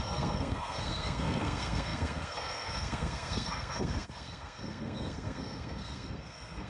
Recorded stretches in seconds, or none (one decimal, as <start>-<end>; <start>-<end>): none